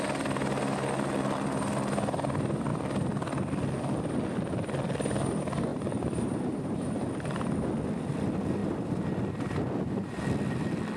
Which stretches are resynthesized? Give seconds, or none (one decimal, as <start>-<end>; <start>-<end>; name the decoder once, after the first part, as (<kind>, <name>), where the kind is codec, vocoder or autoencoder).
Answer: 5.7-7.1 (vocoder, BigVGAN v2)